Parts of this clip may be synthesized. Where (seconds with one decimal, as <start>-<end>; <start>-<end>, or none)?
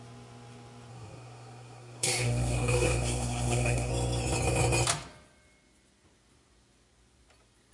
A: 0.9-3.9